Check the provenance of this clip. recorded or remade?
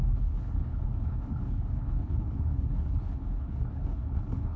remade